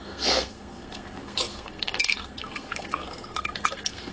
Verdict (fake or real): fake